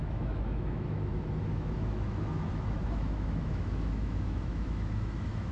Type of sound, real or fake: fake